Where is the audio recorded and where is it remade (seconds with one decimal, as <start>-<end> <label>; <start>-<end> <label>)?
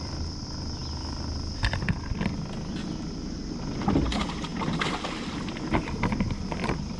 0.0-7.0 recorded